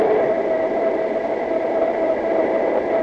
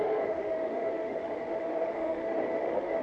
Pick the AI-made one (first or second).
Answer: second